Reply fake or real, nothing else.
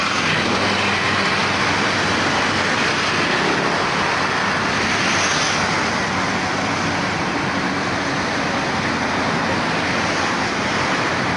real